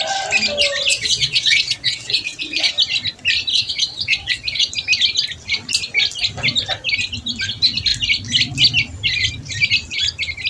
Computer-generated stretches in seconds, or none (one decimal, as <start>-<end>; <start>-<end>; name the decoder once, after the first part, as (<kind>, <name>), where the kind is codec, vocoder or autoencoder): 0.9-2.7 (vocoder, WaveNeXt); 3.5-4.7